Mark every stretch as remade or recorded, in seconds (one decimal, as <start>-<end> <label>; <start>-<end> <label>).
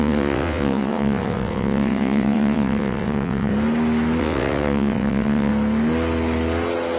0.0-3.5 remade; 3.5-4.2 recorded; 4.2-5.5 remade; 5.5-7.0 recorded